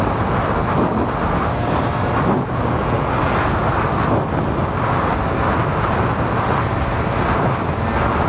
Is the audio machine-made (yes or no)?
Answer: no